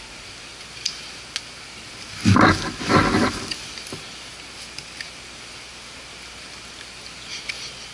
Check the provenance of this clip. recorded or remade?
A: recorded